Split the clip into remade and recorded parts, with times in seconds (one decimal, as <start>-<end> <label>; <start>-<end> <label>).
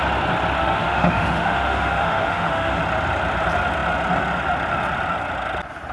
0.0-0.6 recorded; 0.6-2.8 remade; 2.8-5.9 recorded